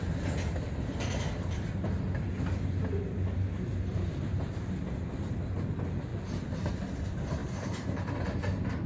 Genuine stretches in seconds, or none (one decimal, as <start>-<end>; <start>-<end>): 0.0-6.1; 6.7-7.4; 8.1-8.9